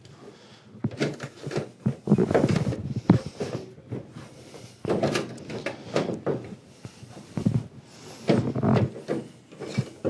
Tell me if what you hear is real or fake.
real